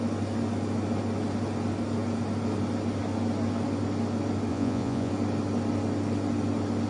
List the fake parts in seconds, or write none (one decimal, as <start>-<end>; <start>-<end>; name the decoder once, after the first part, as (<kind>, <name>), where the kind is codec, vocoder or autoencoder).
4.5-5.1 (vocoder, Vocos)